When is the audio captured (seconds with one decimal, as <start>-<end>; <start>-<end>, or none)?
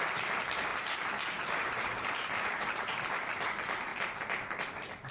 0.0-0.7; 2.9-5.1